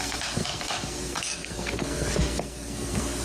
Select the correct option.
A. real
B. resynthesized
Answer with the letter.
B